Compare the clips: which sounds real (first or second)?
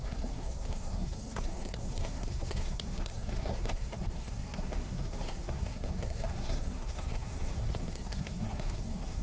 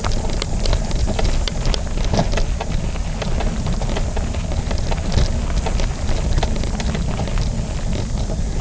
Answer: second